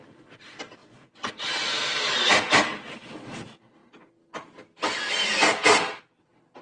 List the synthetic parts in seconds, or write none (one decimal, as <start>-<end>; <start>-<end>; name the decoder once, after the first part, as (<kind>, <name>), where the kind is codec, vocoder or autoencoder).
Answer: 0.8-1.3 (vocoder, Vocos)